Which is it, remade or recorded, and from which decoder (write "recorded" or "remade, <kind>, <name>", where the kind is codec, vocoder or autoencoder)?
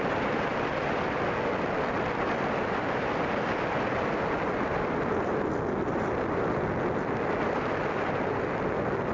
recorded